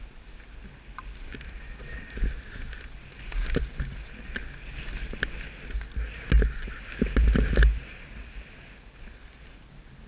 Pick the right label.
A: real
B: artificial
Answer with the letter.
A